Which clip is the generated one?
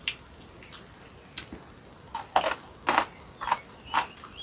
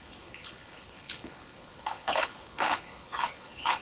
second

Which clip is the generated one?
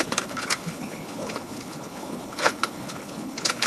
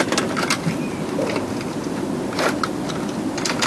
first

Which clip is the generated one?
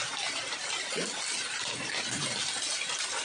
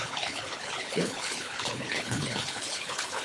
second